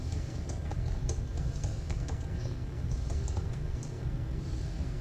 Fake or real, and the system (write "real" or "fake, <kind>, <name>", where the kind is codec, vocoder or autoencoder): fake, codec, SNAC